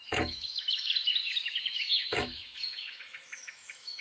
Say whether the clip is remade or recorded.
remade